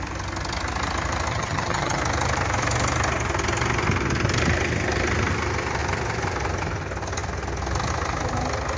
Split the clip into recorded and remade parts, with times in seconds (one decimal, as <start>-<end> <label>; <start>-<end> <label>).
0.0-1.3 recorded; 1.3-2.0 remade; 2.0-8.8 recorded